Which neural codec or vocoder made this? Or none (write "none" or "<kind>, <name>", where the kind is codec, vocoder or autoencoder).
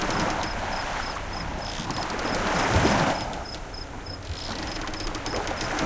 none